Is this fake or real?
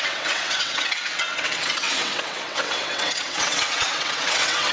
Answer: fake